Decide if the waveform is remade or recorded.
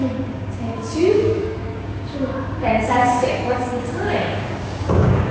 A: remade